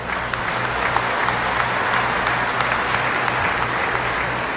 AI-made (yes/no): no